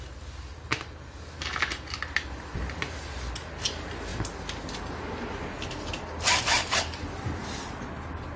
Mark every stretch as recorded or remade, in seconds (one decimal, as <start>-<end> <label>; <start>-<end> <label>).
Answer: 0.0-8.4 recorded